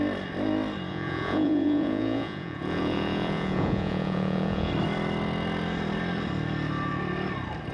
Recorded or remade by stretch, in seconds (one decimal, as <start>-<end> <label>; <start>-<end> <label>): 0.0-0.9 recorded; 0.9-4.7 remade; 4.7-7.7 recorded